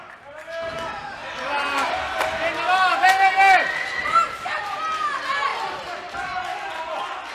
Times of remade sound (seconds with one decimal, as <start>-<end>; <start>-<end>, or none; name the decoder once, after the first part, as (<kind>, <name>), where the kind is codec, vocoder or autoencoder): 1.2-2.2 (vocoder, BigVGAN v2); 4.0-4.8